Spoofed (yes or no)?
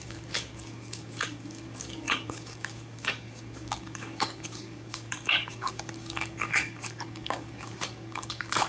yes